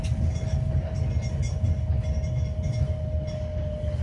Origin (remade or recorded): recorded